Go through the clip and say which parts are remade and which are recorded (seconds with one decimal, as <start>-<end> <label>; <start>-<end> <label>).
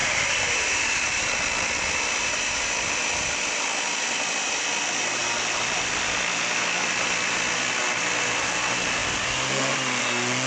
0.0-3.6 remade; 3.6-10.5 recorded